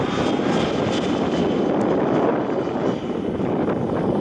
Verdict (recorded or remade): remade